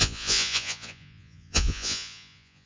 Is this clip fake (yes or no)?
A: yes